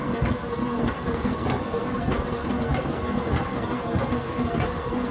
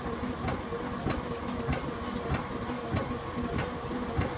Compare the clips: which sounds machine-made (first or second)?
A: first